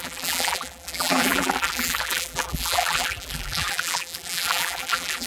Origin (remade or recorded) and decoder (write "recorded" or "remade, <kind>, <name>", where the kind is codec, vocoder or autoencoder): remade, vocoder, BigVGAN v2